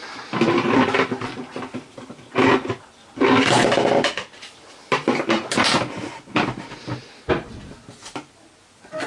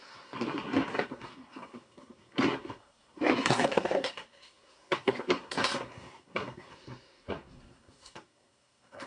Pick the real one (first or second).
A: first